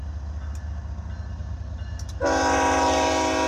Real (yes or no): yes